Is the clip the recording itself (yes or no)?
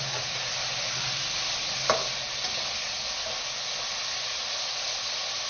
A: yes